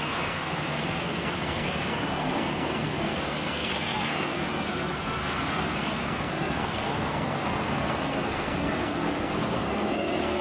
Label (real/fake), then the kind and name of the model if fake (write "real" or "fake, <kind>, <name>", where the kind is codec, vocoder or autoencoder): fake, codec, SNAC